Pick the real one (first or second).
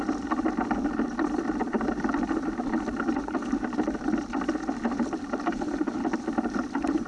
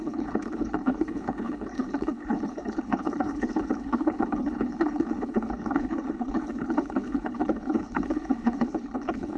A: first